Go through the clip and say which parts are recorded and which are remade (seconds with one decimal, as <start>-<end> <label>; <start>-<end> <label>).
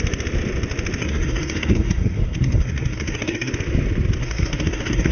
0.0-1.0 recorded; 1.0-3.5 remade; 3.5-4.2 recorded; 4.2-5.1 remade